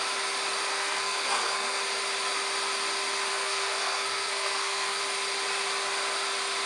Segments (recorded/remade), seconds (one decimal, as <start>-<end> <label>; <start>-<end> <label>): 0.0-0.7 recorded; 0.7-1.8 remade; 1.8-3.3 recorded; 3.3-5.0 remade; 5.0-6.7 recorded